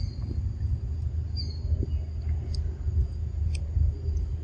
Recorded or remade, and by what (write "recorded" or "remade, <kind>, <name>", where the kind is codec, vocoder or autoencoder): recorded